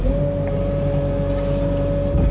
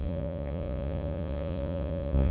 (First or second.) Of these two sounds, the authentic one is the first